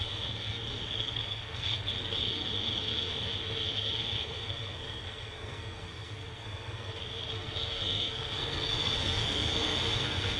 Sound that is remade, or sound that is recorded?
remade